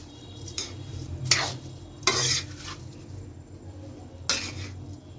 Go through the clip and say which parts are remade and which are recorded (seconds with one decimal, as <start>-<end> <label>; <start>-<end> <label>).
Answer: 0.0-1.2 remade; 1.2-5.2 recorded